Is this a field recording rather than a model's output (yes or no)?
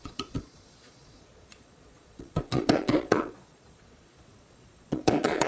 no